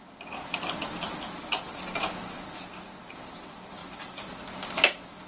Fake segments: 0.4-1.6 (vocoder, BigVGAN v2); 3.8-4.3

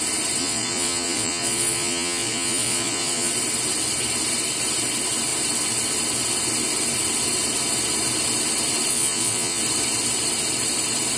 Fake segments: 0.4-3.3 (vocoder, Vocos); 8.9-9.6

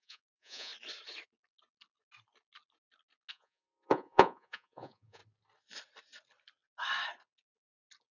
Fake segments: 0.0-0.7 (vocoder, Vocos); 3.3-5.2

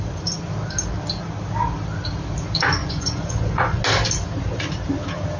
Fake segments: 2.8-3.8 (vocoder, Vocos)

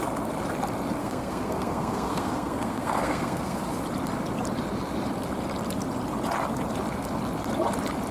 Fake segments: 1.0-3.6 (codec, SNAC)

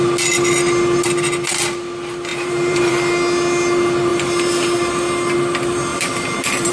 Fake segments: 2.3-2.9 (vocoder, BigVGAN v2); 4.1-4.9; 5.9-6.7